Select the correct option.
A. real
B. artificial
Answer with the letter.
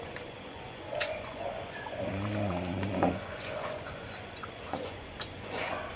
B